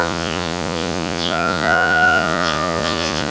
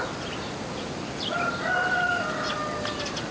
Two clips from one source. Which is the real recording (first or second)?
second